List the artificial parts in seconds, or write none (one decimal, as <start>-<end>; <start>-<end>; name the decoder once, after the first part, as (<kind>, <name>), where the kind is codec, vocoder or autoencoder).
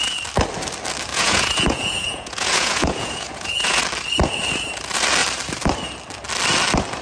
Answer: 1.1-3.8 (vocoder, Vocos)